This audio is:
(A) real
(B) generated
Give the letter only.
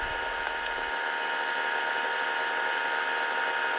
A